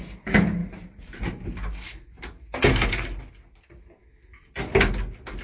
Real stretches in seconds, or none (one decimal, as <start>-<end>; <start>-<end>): 0.0-0.6; 3.3-5.4